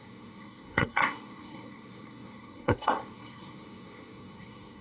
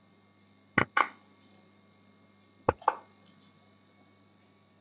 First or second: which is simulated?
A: first